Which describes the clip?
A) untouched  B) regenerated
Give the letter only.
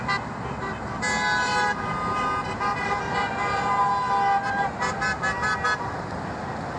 A